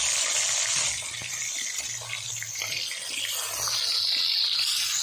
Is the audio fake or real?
real